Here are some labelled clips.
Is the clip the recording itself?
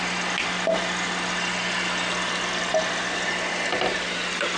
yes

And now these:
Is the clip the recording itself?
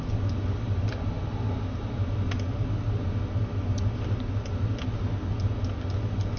yes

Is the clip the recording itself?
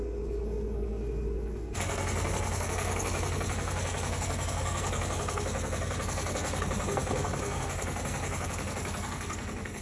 no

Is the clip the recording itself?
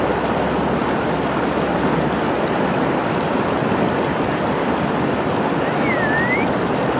yes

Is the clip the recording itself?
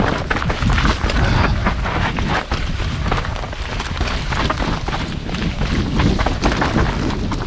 yes